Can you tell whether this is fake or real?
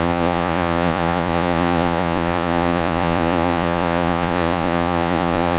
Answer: fake